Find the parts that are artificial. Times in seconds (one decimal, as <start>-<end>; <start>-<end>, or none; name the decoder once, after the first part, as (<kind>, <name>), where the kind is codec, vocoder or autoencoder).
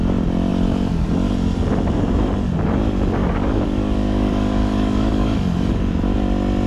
3.2-5.8 (codec, DAC)